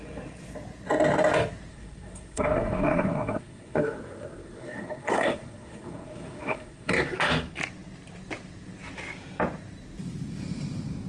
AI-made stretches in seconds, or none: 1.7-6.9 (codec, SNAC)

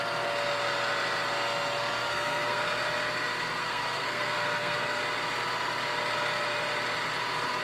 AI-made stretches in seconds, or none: 2.0-2.6 (codec, SNAC); 3.6-5.0

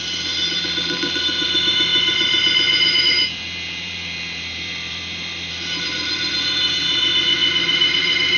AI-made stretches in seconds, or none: 0.0-1.9 (vocoder, BigVGAN v2); 3.0-8.4

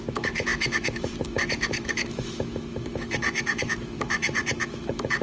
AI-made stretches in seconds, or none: 0.0-5.2 (autoencoder, DAC-VAE)

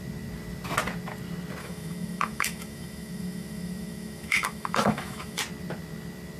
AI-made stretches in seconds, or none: 1.6-5.4 (autoencoder, DAC-VAE)